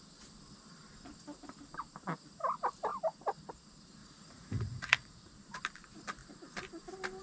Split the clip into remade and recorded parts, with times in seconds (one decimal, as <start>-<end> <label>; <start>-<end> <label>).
0.0-4.0 recorded; 4.0-5.3 remade; 5.3-7.2 recorded